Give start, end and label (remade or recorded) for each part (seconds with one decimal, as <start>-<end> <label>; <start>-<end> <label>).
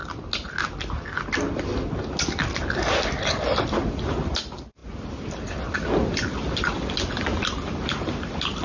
0.0-8.6 recorded